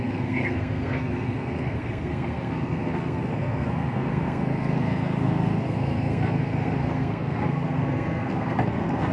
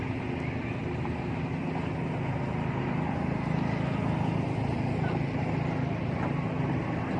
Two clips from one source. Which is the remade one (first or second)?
first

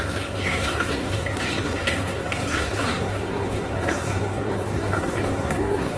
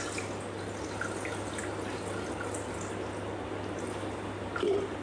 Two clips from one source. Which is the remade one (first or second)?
first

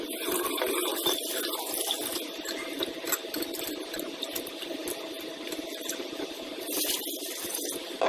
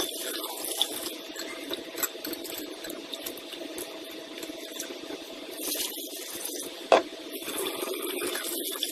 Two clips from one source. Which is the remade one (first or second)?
first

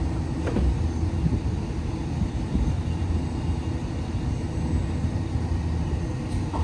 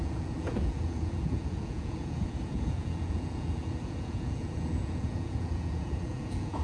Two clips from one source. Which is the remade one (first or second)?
second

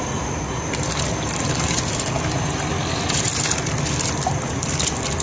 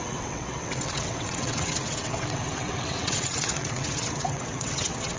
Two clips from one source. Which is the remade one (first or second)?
second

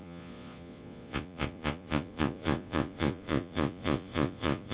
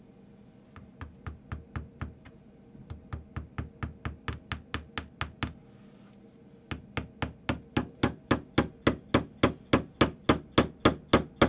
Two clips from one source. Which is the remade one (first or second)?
first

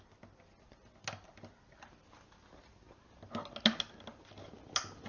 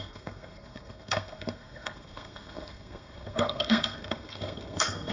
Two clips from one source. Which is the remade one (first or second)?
second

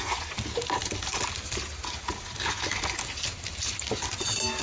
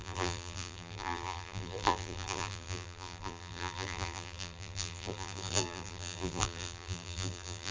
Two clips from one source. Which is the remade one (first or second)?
second